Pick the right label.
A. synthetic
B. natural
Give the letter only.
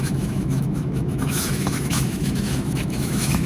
A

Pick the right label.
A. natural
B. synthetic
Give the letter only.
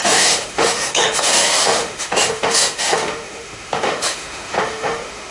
B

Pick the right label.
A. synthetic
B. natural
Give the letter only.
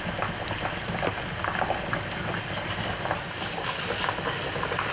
B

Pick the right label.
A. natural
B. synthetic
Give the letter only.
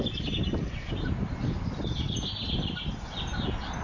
A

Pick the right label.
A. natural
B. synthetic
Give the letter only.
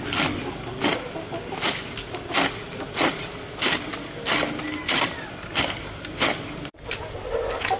A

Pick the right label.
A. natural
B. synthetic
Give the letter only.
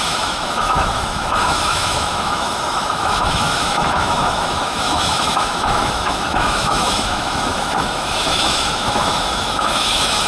B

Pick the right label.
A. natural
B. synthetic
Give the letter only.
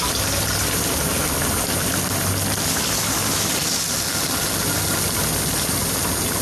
A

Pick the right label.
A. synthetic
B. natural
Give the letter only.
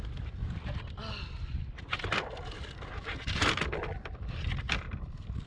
B